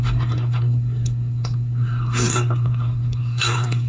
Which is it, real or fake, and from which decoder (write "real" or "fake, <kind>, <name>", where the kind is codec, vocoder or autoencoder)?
fake, codec, SNAC